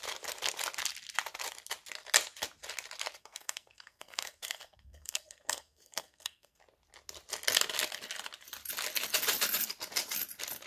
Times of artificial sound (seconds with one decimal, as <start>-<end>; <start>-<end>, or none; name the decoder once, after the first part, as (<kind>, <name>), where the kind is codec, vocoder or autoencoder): 3.2-6.6 (codec, SNAC)